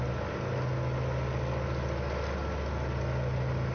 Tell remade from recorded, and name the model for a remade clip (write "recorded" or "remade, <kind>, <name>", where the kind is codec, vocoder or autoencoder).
recorded